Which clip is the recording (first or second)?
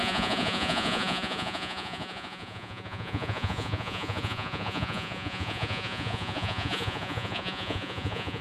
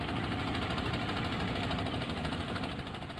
second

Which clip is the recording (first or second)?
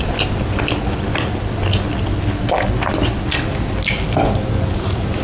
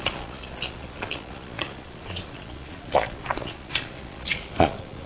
first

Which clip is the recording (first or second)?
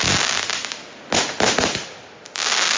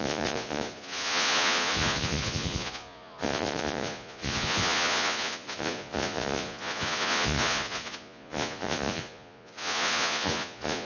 first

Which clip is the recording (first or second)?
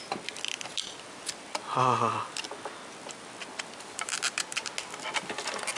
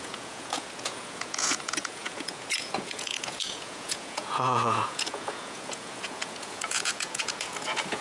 first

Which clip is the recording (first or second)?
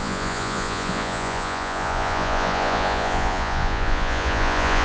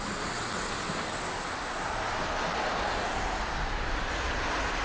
second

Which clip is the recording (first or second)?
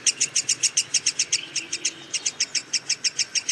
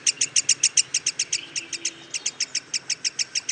second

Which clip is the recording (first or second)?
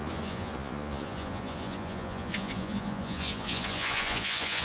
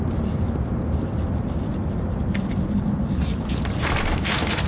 second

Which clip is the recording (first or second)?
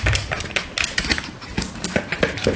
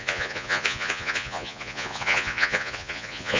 first